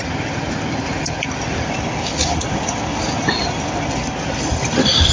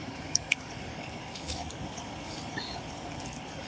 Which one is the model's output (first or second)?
second